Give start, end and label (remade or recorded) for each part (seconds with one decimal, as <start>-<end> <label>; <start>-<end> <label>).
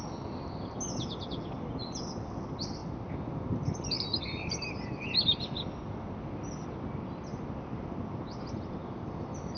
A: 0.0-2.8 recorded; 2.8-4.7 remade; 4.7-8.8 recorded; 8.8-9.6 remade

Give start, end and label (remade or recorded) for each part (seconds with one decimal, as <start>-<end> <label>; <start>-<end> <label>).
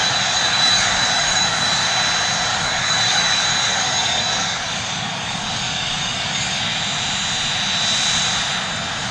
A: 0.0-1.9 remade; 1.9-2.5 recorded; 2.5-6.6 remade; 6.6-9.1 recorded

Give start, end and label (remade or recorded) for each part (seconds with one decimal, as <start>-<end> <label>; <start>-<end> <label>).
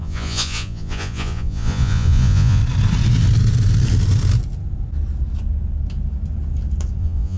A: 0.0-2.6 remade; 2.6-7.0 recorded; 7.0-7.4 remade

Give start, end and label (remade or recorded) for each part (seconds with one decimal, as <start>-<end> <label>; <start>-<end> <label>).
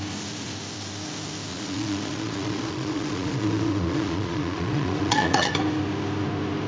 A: 0.0-1.5 recorded; 1.5-5.5 remade; 5.5-6.7 recorded